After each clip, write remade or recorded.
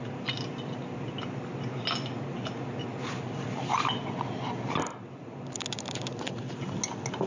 recorded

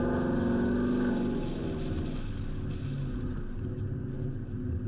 recorded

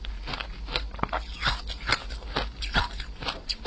recorded